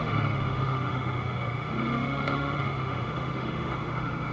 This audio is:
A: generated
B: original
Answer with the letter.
A